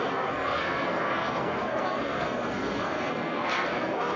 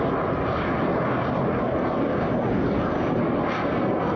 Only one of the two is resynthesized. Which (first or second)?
first